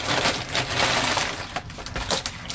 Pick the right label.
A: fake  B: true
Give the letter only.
B